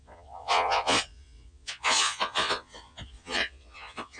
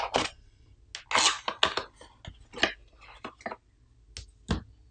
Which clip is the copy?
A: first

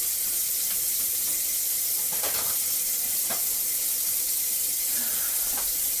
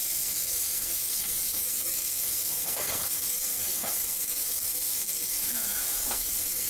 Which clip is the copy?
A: second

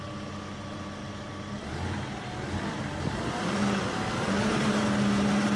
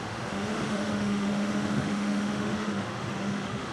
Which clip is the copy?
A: second